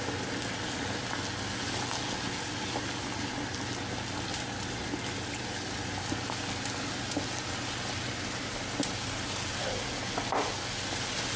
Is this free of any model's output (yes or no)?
yes